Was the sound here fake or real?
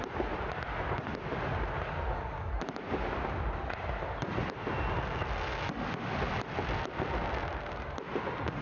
real